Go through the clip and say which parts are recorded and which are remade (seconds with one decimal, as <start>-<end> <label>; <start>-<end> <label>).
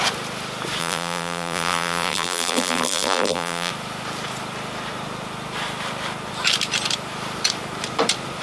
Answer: 0.0-0.8 recorded; 0.8-3.7 remade; 3.7-8.4 recorded